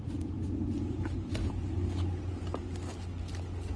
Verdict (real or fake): real